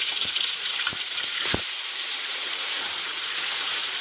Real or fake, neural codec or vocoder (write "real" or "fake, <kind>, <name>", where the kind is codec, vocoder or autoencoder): fake, vocoder, Vocos